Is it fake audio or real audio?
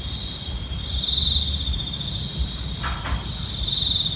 real